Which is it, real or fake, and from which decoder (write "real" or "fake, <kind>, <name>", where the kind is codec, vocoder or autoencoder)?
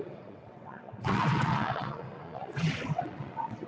fake, vocoder, WaveNeXt